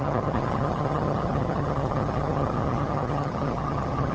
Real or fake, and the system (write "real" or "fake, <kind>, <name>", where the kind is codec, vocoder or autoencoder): fake, vocoder, HiFi-GAN